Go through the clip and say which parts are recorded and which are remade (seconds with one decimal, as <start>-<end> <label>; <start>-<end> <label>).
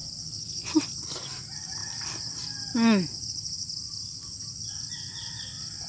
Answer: 0.0-5.9 recorded